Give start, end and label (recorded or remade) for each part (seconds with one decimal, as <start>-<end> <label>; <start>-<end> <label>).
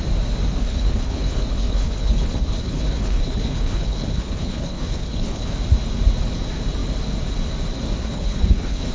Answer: 0.0-0.6 recorded; 0.6-5.6 remade; 5.6-8.0 recorded; 8.0-8.9 remade